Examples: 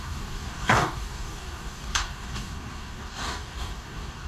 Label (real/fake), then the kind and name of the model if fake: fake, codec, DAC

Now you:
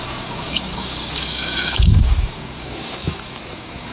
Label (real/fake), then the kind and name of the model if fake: fake, codec, DAC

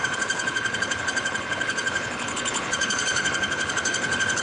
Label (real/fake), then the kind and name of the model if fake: fake, codec, HILCodec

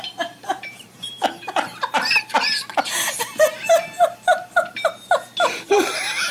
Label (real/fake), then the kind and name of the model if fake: fake, vocoder, BigVGAN v2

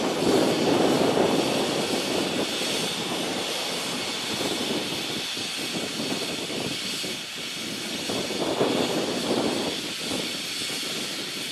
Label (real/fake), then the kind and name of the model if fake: real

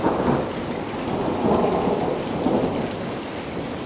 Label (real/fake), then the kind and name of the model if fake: real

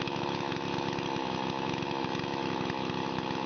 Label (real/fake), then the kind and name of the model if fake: fake, autoencoder, DAC-VAE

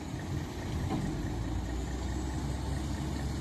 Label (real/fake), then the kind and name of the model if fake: real